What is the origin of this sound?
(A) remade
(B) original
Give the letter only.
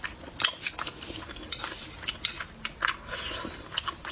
B